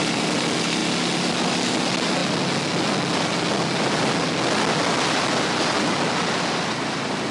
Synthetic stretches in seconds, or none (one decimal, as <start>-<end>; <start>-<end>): none

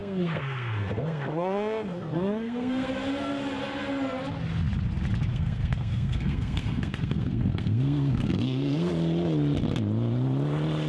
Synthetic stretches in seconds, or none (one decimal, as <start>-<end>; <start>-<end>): 0.0-2.9; 5.3-8.9

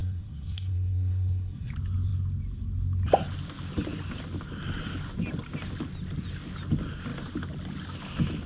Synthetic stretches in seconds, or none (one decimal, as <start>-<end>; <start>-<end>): 0.0-1.7

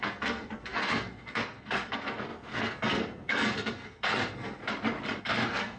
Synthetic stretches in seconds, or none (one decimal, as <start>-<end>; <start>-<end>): 0.0-4.6; 5.2-5.8

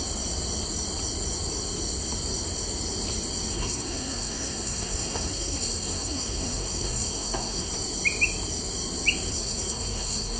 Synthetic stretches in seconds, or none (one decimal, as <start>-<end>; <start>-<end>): 3.5-7.7; 9.3-10.4

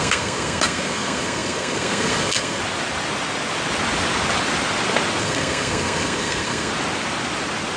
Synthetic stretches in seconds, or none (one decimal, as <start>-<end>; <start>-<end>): 0.0-2.6; 5.2-6.7